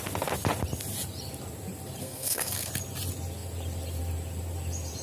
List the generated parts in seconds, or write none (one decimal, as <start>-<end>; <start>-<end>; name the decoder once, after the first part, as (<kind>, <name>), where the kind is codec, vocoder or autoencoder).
2.0-2.7 (codec, SNAC)